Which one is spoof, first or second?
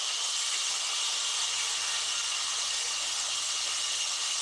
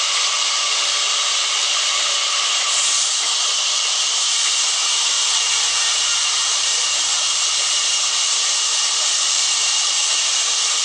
second